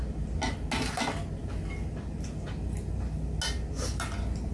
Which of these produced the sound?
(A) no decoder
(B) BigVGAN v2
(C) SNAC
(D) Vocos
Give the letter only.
A